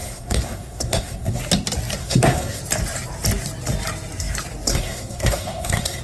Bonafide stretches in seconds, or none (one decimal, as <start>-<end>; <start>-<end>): 1.4-2.0; 2.6-4.7